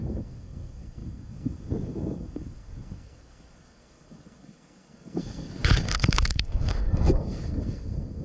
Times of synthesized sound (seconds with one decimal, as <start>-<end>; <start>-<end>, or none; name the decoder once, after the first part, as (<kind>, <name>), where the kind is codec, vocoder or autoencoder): 0.0-8.2 (codec, SNAC)